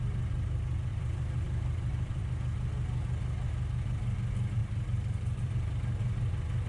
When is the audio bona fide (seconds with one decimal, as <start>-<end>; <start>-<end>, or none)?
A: 0.0-0.9; 2.2-4.6; 5.5-6.0